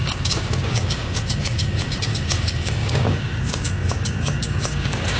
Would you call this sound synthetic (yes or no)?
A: yes